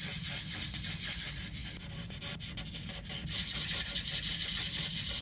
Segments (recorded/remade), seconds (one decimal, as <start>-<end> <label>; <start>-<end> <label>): 0.0-5.2 recorded